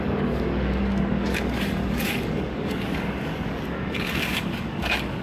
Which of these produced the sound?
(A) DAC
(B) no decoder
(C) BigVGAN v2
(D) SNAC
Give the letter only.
A